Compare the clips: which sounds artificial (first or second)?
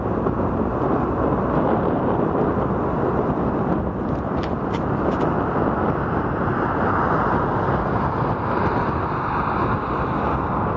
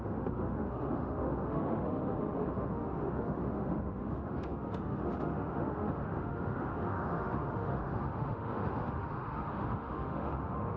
second